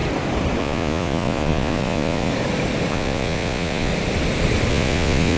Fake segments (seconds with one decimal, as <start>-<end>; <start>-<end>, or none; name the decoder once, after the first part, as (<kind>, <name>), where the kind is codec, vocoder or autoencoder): 0.6-2.3 (vocoder, Vocos); 2.9-3.9; 4.7-5.4